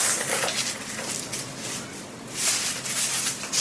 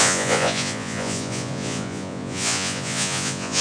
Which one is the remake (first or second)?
second